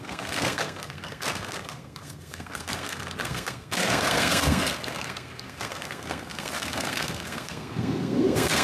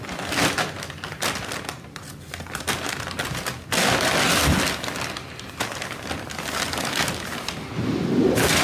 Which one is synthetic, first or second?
first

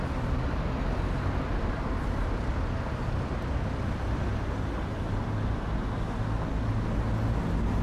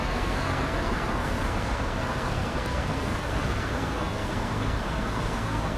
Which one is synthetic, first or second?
second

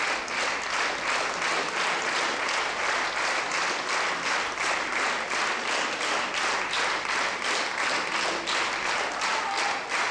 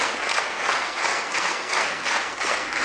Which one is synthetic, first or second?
second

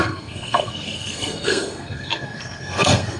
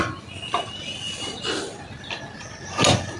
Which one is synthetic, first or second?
first